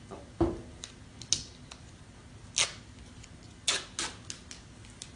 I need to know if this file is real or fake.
real